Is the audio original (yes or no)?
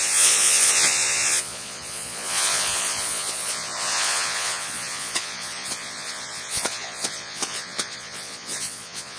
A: no